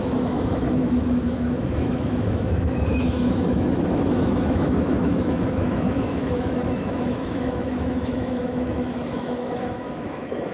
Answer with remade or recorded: remade